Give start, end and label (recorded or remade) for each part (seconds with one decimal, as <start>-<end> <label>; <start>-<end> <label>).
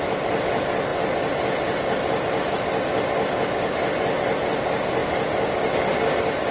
0.0-6.5 recorded